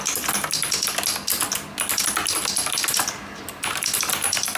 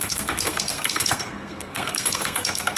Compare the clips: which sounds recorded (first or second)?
first